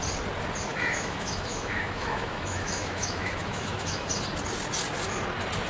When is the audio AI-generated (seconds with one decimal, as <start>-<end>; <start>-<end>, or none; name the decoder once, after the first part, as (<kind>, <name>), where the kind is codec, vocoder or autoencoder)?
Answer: 0.7-4.1 (autoencoder, DAC-VAE)

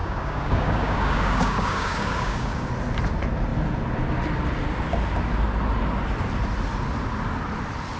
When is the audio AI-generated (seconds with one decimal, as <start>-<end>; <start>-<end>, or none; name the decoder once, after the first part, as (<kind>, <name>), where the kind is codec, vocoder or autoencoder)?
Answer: 0.0-2.7 (codec, DAC)

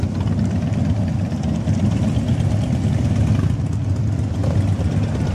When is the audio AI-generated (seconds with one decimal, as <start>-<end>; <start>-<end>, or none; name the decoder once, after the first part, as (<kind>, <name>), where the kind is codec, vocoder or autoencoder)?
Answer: none

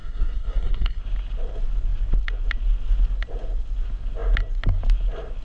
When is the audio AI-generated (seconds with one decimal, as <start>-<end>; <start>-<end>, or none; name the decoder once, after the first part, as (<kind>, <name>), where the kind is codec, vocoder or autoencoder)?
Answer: 0.0-1.0 (codec, SNAC)